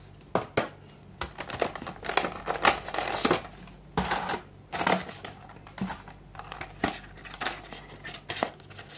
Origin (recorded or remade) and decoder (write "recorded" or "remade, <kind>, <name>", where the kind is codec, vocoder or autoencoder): recorded